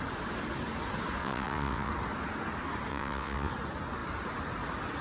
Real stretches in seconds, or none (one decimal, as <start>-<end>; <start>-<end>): 0.0-1.2; 1.9-2.9; 3.5-5.0